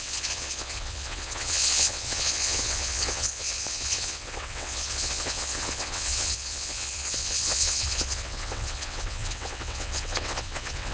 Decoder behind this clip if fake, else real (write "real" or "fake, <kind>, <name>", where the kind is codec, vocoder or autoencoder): fake, vocoder, WaveNeXt